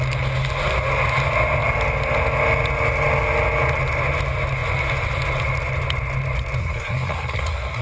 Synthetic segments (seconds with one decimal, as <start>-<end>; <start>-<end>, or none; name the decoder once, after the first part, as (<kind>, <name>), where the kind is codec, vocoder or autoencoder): 6.6-7.8 (codec, SNAC)